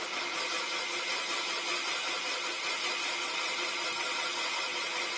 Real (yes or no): yes